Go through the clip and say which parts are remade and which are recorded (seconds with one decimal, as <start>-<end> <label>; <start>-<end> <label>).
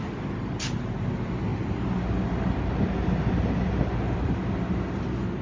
0.0-5.4 recorded